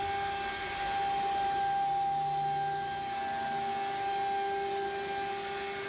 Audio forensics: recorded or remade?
recorded